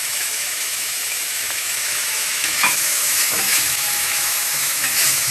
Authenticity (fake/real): fake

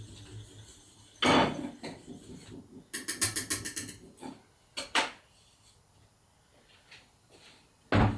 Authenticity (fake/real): real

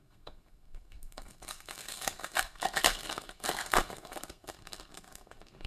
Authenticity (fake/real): fake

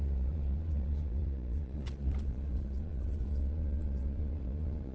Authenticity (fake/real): fake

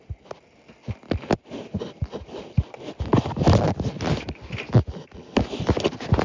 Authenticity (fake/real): real